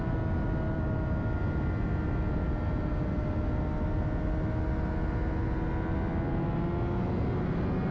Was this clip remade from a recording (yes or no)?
no